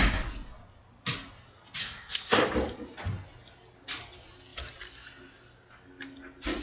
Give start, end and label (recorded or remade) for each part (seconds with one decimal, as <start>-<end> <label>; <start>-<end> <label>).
0.0-1.8 recorded; 1.8-2.5 remade; 2.5-6.6 recorded